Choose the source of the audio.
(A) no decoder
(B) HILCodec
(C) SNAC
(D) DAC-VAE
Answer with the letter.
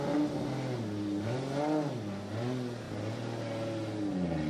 A